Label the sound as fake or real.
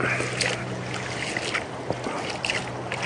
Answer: real